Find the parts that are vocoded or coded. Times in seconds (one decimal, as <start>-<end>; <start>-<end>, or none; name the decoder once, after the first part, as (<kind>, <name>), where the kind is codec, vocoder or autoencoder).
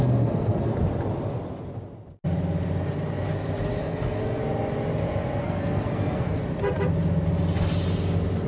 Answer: 0.0-0.7 (codec, SNAC); 3.8-4.4; 5.4-6.4